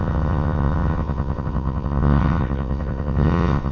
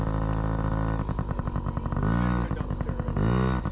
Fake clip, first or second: first